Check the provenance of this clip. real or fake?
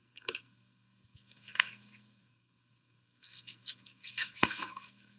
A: fake